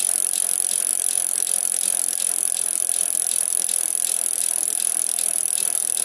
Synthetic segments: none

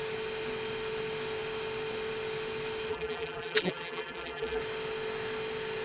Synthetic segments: 2.9-4.6 (vocoder, BigVGAN v2)

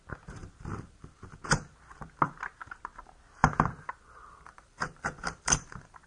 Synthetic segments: 0.4-1.1 (vocoder, BigVGAN v2); 3.4-6.1

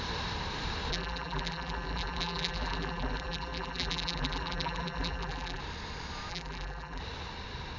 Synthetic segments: 0.9-5.6 (vocoder, BigVGAN v2); 6.3-7.0